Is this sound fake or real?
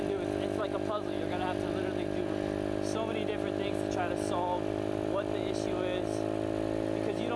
real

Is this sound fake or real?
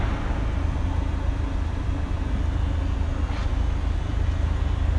real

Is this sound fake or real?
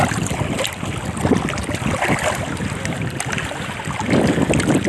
real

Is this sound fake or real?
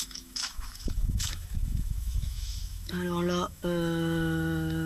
fake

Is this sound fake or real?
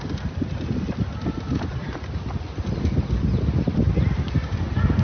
real